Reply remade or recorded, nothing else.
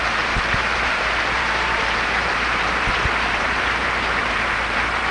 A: remade